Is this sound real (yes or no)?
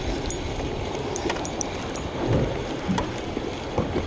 yes